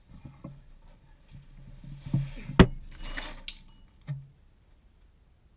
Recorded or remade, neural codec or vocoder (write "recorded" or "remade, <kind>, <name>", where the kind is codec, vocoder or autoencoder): recorded